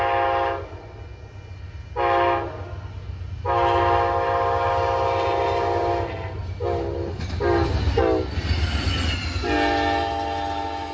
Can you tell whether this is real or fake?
real